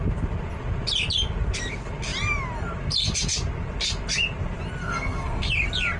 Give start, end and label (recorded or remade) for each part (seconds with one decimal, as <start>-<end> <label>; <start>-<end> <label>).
0.0-4.8 recorded; 4.8-5.5 remade; 5.5-6.0 recorded